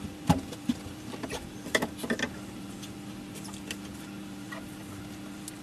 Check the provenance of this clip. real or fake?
real